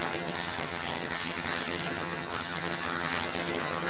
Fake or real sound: fake